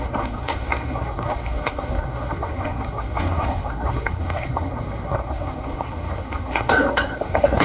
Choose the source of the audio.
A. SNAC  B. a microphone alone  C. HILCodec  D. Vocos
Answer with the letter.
A